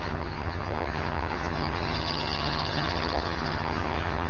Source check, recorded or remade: remade